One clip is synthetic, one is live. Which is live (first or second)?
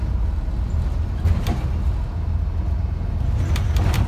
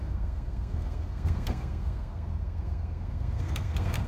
first